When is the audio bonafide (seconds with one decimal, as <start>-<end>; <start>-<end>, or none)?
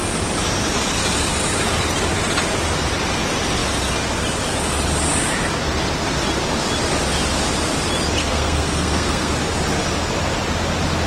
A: 0.0-8.2; 9.3-11.1